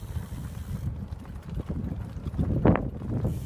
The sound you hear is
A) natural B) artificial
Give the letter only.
A